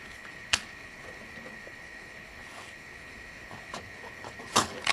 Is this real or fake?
fake